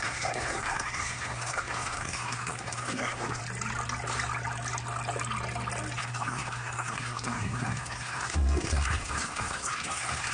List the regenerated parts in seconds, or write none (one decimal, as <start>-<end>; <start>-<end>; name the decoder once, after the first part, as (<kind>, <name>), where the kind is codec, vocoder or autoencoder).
0.0-3.4 (codec, SNAC); 6.0-10.3